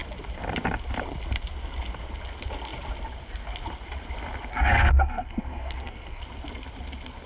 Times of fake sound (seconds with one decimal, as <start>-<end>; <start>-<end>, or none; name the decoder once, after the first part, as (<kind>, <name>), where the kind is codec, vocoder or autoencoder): 4.5-6.2 (codec, SNAC)